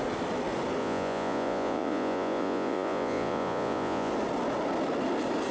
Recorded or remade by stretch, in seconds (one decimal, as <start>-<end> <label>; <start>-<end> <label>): 0.0-0.8 recorded; 0.8-4.1 remade; 4.1-5.5 recorded